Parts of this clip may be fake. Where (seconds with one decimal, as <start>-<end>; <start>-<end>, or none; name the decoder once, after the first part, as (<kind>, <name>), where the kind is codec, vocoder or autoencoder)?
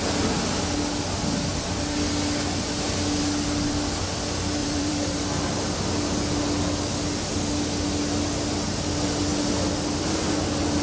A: 4.6-5.2 (vocoder, BigVGAN v2)